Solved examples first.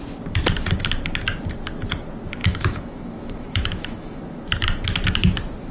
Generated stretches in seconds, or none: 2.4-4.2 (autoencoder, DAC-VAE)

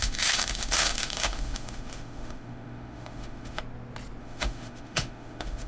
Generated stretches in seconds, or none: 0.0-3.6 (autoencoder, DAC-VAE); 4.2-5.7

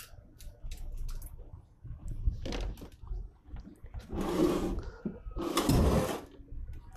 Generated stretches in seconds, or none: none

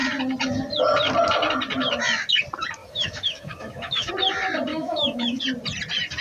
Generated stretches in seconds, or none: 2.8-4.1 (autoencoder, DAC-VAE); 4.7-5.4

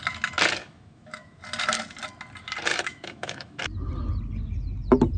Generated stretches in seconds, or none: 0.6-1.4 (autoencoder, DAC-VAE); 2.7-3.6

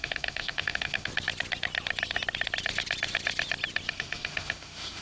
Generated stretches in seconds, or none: 0.0-1.1 (autoencoder, DAC-VAE); 3.9-5.0

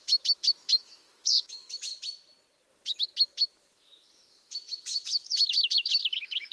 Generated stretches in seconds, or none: 0.0-1.9 (autoencoder, DAC-VAE); 2.7-6.5

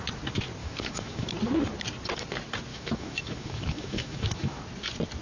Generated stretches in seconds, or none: 0.6-1.3 (autoencoder, DAC-VAE); 2.7-4.6